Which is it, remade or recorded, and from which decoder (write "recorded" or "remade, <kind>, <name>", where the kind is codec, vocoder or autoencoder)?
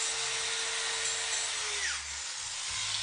recorded